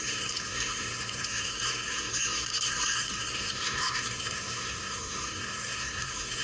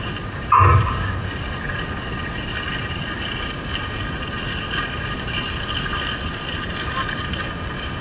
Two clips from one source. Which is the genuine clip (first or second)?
second